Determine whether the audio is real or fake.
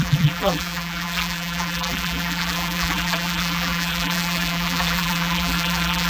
fake